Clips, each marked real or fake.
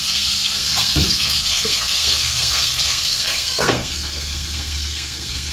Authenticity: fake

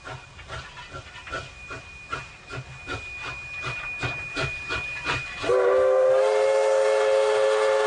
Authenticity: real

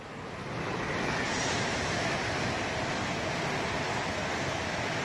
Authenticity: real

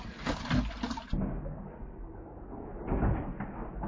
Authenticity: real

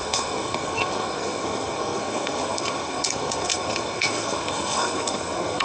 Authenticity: fake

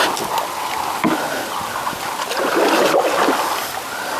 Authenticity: real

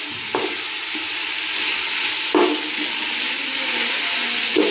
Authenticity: real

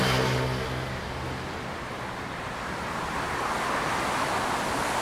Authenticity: real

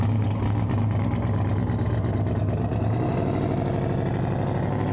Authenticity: real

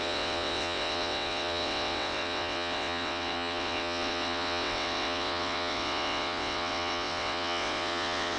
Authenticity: fake